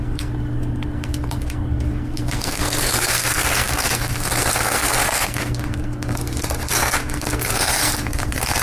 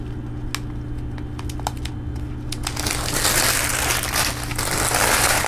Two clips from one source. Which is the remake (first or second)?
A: first